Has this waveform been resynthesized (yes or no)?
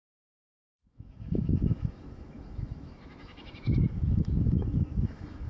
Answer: yes